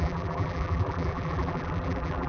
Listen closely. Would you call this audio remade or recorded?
remade